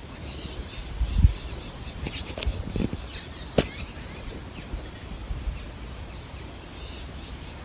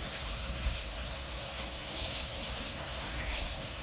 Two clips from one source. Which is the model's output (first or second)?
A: second